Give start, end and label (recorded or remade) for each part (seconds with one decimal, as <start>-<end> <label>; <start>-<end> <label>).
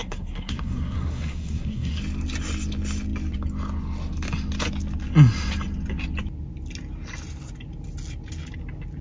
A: 0.0-2.0 remade; 2.0-9.0 recorded